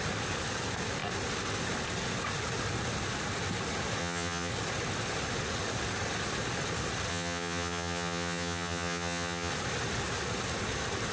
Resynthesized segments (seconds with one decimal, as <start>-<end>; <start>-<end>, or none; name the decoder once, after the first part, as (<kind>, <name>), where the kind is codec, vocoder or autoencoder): 4.0-4.5 (vocoder, HiFi-GAN); 7.1-9.5